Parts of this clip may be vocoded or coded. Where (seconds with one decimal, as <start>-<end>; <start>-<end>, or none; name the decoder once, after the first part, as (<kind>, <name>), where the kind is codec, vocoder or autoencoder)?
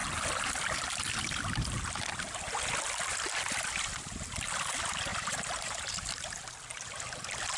5.1-6.1 (vocoder, BigVGAN v2)